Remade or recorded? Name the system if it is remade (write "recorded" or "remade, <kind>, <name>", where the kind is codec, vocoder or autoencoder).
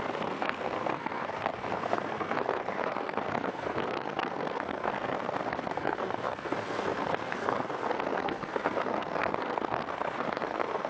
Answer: remade, codec, SNAC